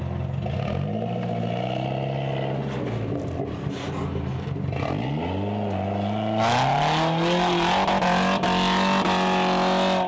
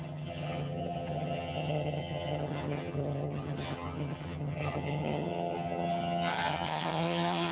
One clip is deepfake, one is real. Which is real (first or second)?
first